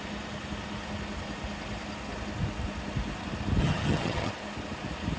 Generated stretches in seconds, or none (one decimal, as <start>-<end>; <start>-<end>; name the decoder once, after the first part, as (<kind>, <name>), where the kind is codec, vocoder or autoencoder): 3.6-4.3 (vocoder, HiFi-GAN)